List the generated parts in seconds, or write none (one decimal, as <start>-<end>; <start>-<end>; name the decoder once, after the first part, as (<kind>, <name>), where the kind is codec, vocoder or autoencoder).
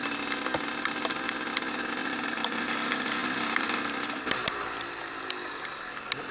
2.0-2.6 (vocoder, BigVGAN v2)